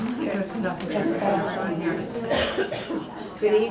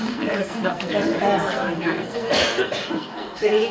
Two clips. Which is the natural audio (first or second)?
first